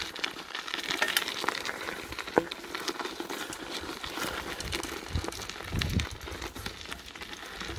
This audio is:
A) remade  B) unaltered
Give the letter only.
B